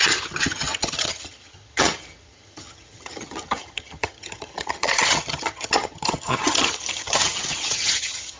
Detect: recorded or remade remade